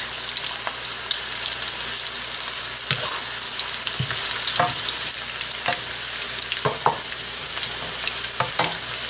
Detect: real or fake real